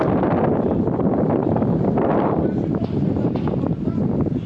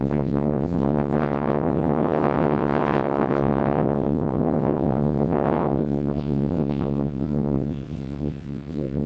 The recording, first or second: first